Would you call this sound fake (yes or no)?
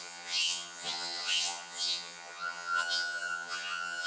yes